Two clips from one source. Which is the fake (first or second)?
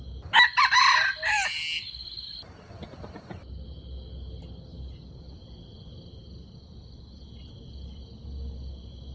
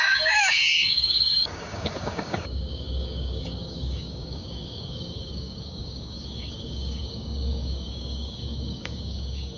second